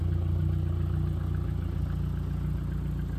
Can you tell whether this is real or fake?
real